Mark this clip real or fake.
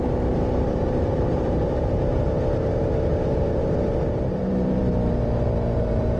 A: fake